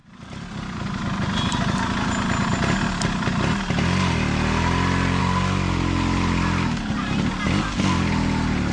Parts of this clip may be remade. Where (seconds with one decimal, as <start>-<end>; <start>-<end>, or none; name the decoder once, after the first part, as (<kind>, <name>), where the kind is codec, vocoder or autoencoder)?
none